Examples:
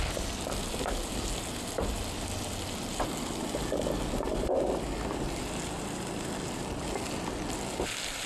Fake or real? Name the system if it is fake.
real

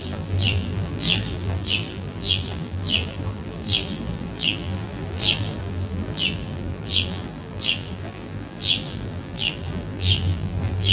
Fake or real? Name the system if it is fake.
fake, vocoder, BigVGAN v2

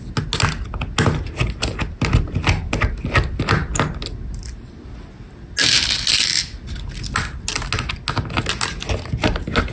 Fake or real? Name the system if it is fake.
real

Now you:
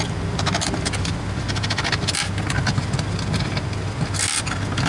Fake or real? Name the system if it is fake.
real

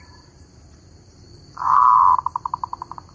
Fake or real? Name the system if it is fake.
fake, vocoder, BigVGAN v2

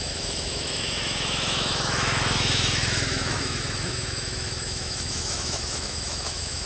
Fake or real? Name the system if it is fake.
fake, autoencoder, DAC-VAE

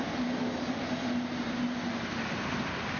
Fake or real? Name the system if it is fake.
real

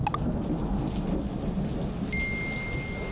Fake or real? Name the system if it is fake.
real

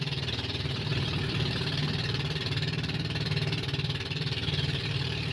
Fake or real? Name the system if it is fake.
fake, vocoder, BigVGAN v2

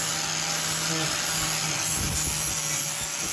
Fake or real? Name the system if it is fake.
real